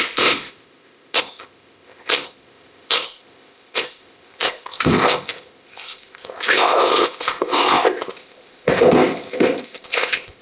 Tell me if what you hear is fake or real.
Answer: fake